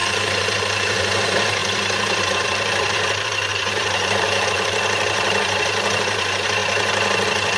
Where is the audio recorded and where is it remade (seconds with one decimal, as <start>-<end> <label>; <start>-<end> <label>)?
0.0-7.6 remade